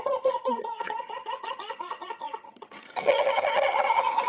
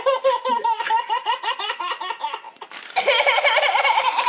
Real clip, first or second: second